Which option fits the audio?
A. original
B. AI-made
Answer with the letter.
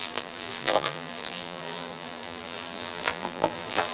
B